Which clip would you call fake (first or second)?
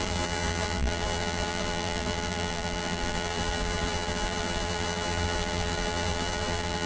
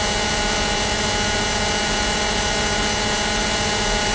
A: first